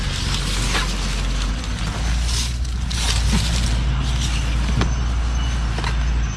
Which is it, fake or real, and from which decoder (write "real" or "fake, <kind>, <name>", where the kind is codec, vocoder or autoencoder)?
real